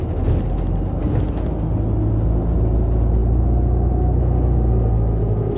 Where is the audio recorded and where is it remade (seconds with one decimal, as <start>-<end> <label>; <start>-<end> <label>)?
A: 0.0-5.6 recorded